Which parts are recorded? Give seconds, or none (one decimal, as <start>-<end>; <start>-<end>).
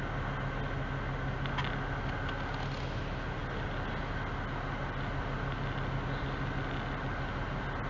0.0-7.9